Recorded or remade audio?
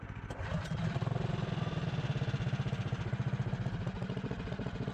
recorded